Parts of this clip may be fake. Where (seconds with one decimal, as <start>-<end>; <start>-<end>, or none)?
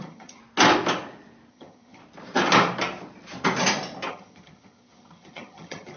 0.0-0.4; 1.5-2.0; 4.1-6.0